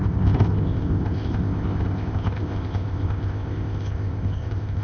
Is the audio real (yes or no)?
no